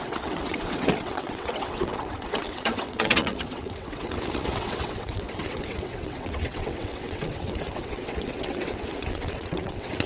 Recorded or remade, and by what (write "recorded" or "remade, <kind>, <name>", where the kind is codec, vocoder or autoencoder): remade, vocoder, WaveNeXt